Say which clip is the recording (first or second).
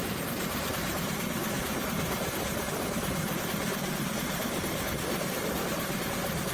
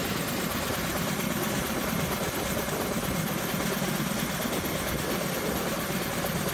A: second